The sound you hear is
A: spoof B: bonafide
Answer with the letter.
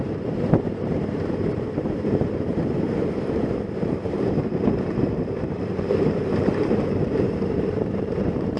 A